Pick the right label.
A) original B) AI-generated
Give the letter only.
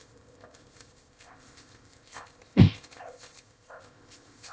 B